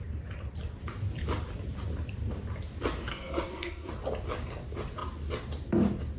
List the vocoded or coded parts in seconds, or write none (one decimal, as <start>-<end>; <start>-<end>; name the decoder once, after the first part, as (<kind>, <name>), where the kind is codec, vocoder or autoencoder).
3.1-3.9 (codec, SNAC)